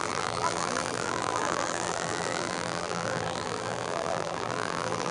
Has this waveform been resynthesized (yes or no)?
yes